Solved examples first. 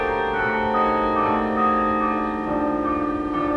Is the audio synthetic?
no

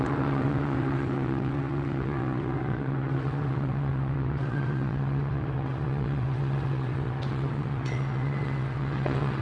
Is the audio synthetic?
yes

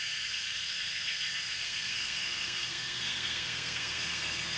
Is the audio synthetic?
yes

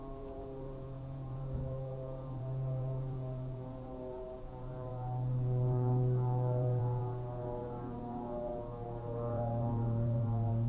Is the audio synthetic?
yes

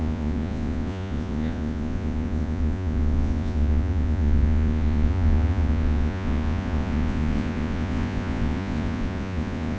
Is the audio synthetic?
yes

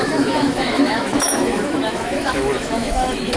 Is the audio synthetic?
yes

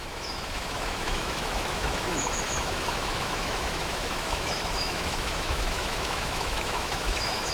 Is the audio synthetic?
yes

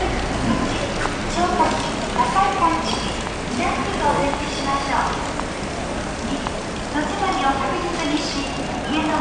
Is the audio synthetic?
no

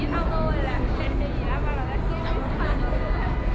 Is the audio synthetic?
no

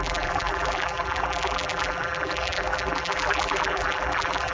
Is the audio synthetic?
yes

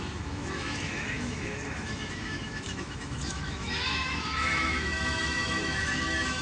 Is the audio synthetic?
yes